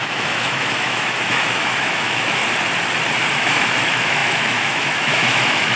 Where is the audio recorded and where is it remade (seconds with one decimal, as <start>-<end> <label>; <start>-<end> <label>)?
0.0-2.4 remade; 2.4-3.3 recorded; 3.3-5.8 remade